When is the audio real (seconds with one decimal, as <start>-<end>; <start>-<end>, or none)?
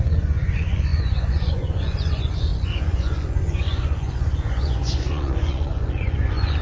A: none